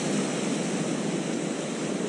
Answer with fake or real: real